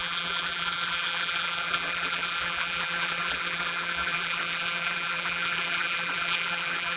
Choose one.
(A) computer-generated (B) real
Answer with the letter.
A